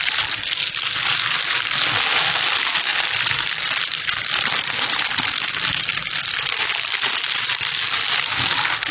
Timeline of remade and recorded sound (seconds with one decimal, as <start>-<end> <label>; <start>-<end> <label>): 0.0-8.9 recorded